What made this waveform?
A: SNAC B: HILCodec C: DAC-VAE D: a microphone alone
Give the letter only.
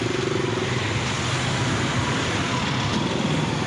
D